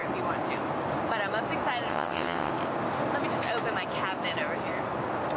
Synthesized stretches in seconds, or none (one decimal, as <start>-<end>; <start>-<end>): 1.9-2.5

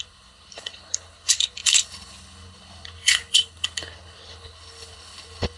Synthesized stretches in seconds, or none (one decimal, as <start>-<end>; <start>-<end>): 0.0-5.6